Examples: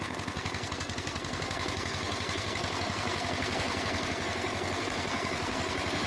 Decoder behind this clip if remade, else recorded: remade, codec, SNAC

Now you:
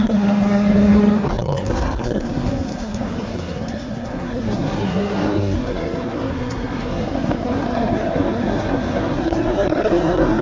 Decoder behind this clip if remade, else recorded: remade, codec, SNAC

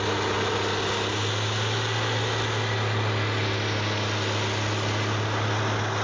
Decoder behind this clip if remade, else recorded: recorded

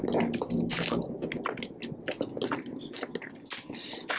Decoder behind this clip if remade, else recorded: recorded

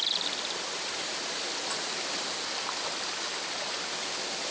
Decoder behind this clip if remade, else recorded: recorded